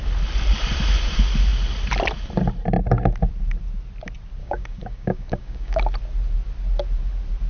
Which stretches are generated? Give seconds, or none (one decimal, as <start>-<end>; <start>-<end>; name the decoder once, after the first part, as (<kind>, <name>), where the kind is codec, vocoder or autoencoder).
4.4-5.8 (codec, DAC)